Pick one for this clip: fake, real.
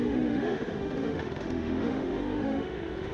fake